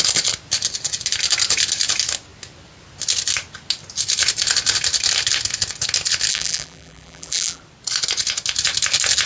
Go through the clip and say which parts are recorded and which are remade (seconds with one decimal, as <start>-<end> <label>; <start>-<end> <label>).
0.0-6.3 recorded; 6.3-7.6 remade; 7.6-9.3 recorded